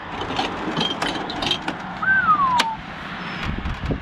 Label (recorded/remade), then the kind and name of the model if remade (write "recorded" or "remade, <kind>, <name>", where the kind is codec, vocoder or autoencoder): recorded